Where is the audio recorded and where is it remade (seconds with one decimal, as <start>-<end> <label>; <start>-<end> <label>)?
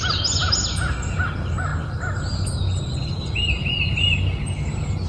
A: 0.0-5.1 recorded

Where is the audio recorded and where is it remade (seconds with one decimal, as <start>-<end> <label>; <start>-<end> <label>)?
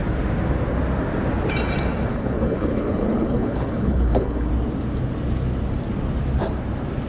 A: 0.0-2.1 recorded; 2.1-4.5 remade; 4.5-7.1 recorded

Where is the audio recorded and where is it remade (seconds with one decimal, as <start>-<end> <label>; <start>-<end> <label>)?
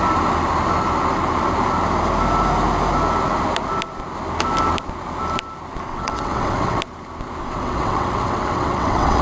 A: 0.0-5.9 recorded; 5.9-6.8 remade; 6.8-7.4 recorded; 7.4-9.2 remade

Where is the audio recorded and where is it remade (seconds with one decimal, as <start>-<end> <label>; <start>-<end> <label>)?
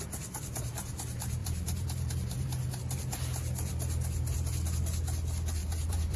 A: 0.0-1.4 recorded; 1.4-2.8 remade; 2.8-5.6 recorded; 5.6-6.2 remade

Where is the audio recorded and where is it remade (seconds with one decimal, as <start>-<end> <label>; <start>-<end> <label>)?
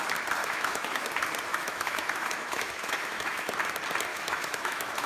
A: 0.0-0.4 recorded; 0.4-1.1 remade; 1.1-1.5 recorded; 1.5-3.5 remade; 3.5-4.1 recorded; 4.1-5.1 remade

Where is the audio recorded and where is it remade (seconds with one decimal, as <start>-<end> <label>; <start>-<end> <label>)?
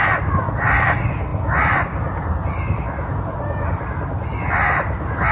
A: 0.0-5.3 recorded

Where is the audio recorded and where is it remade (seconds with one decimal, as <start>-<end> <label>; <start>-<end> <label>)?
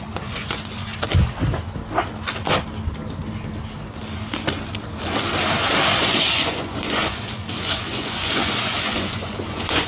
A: 0.0-0.9 remade; 0.9-5.9 recorded; 5.9-9.9 remade